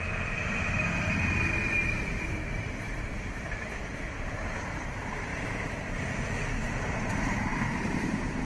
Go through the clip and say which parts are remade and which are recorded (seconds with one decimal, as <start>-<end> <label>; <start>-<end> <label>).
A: 0.0-8.4 remade